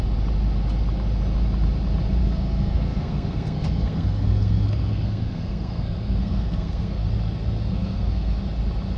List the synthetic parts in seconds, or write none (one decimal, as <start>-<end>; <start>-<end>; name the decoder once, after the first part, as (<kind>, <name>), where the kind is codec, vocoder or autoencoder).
2.2-7.1 (codec, SNAC); 7.7-8.4